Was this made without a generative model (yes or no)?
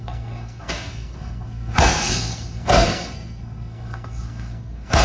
no